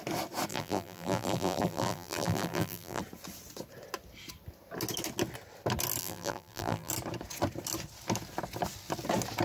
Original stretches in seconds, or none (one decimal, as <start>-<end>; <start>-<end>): 0.0-0.5; 3.0-6.0; 6.9-9.4